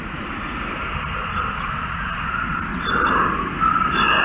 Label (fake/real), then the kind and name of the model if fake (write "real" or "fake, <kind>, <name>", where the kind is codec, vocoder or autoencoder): real